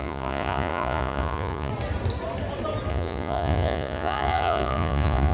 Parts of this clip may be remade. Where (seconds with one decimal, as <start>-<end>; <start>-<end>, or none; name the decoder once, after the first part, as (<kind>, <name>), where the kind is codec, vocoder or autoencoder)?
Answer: 0.0-1.7 (vocoder, Vocos); 2.9-5.3